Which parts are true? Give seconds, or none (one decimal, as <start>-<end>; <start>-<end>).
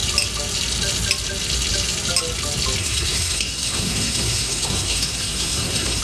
0.0-2.8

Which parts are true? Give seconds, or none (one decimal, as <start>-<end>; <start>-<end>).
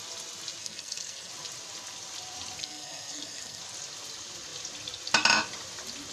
0.0-0.6; 1.3-2.6; 3.6-6.1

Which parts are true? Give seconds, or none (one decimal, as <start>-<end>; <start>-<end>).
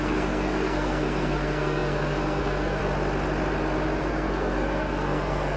2.8-4.0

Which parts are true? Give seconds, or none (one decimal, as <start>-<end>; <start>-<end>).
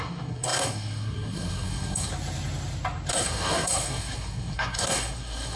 2.1-3.1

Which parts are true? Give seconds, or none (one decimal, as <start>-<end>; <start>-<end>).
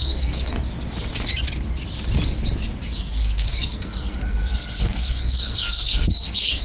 0.5-3.0